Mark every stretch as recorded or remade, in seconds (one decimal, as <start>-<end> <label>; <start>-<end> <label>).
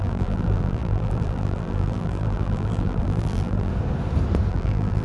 0.0-3.7 remade; 3.7-4.5 recorded; 4.5-5.0 remade